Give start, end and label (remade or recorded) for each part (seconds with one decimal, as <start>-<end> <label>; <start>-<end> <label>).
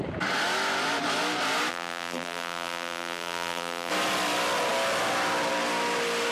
0.0-1.7 recorded; 1.7-3.9 remade; 3.9-6.3 recorded